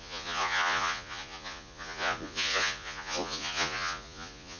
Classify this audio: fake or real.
fake